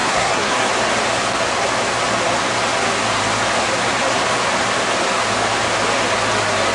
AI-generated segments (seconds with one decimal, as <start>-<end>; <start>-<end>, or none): 0.0-0.7